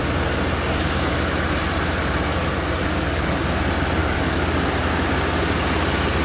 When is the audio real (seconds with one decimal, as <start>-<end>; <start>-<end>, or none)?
0.0-2.8; 3.4-4.0; 4.6-6.2